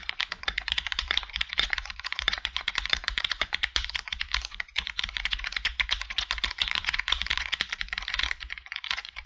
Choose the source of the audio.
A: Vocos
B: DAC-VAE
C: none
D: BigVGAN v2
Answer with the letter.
A